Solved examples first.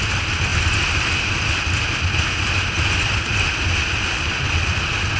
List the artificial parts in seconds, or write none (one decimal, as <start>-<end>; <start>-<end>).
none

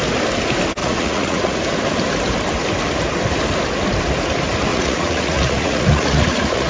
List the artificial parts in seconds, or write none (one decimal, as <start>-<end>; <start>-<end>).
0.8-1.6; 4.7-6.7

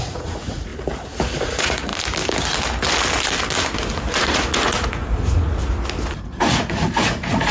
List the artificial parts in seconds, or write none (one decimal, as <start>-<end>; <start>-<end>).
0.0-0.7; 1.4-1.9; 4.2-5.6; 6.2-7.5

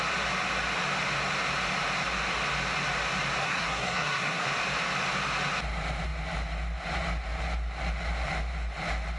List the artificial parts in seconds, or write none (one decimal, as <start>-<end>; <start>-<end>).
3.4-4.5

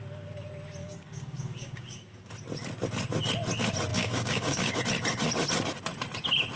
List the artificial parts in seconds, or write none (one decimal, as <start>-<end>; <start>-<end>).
0.8-2.3; 3.9-4.8

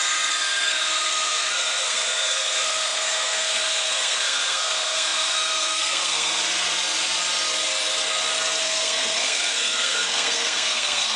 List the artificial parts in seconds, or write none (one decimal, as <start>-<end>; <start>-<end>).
0.0-6.4; 8.6-11.2

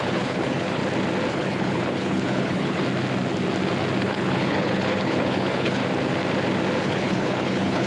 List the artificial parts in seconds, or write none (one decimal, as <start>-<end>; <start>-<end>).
0.0-0.8; 1.3-2.8; 4.0-5.8; 6.8-7.9

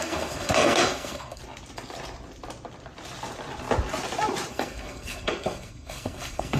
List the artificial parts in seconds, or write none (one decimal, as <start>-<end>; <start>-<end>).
0.0-1.4; 4.5-6.6